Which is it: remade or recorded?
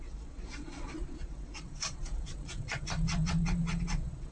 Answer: remade